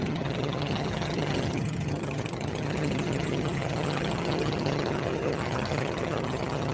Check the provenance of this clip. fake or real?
fake